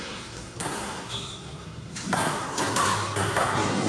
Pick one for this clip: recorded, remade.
remade